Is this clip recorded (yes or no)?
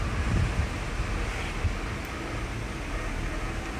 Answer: yes